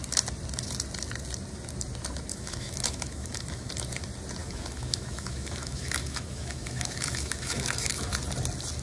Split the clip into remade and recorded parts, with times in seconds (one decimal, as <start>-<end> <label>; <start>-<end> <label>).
0.0-2.3 recorded; 2.3-3.7 remade; 3.7-4.4 recorded; 4.4-8.0 remade; 8.0-8.8 recorded